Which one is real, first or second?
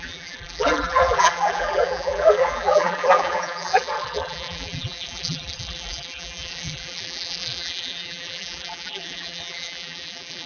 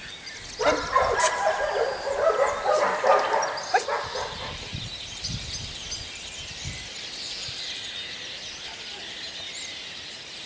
second